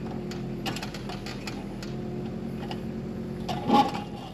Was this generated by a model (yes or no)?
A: no